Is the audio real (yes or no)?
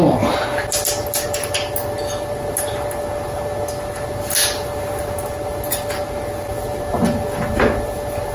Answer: yes